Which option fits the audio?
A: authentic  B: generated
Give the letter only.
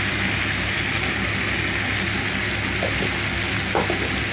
A